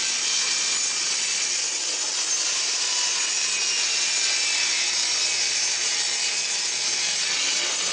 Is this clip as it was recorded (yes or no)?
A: yes